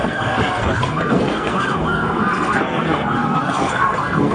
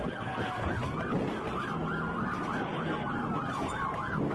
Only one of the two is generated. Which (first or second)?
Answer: first